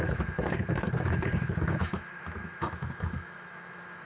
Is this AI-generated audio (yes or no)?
yes